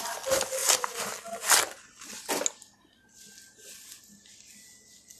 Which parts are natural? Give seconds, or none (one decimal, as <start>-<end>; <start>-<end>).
0.0-5.2